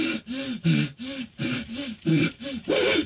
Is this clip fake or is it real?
fake